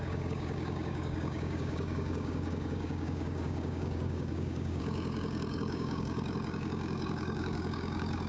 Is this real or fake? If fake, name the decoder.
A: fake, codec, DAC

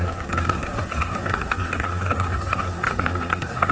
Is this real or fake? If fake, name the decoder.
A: fake, codec, SNAC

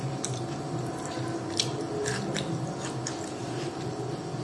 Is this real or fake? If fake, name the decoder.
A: real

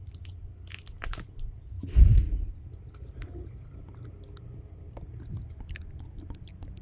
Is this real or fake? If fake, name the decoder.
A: real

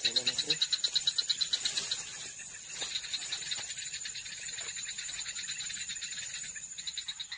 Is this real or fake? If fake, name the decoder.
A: real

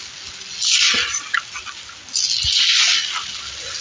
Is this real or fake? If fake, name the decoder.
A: real